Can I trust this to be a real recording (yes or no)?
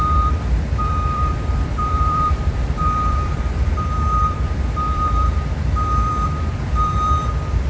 no